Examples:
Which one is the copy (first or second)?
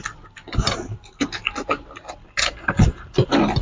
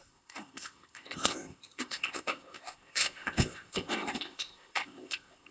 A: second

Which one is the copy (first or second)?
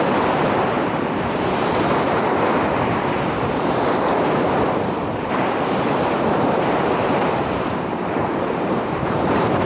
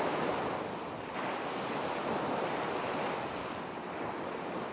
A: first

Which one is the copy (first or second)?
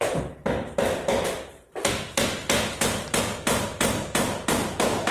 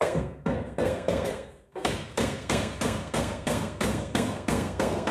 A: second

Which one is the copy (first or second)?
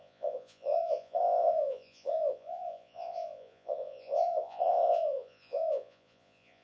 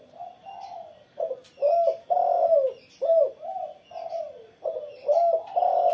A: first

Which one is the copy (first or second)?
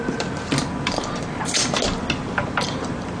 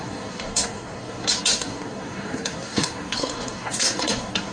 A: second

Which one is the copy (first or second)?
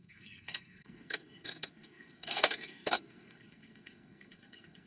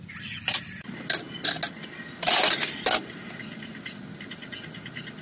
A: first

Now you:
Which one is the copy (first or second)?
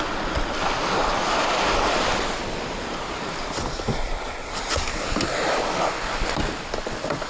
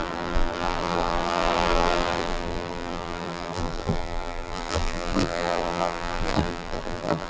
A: second